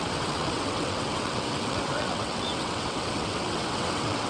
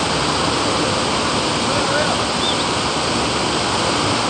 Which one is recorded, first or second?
second